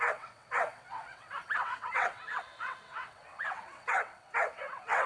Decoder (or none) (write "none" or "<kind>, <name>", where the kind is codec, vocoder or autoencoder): vocoder, WaveNeXt